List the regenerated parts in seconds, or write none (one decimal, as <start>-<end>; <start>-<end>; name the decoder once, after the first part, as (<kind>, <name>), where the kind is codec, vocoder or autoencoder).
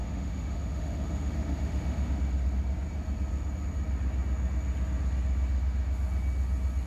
0.0-2.1 (autoencoder, DAC-VAE)